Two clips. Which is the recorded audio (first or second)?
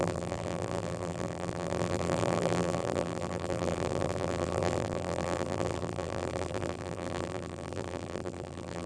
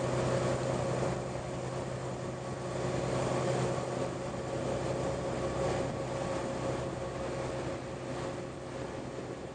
second